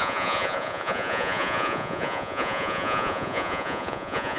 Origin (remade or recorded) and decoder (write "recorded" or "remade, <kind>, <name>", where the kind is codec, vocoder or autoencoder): remade, vocoder, Vocos